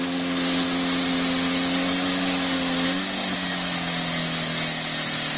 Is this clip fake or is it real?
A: real